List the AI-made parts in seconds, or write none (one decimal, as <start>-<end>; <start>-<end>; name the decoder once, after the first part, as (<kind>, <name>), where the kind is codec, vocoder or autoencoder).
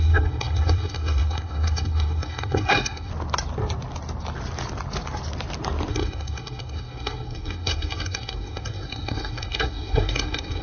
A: 0.0-3.1 (codec, SNAC); 5.9-10.6